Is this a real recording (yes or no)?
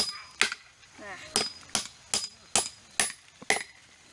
yes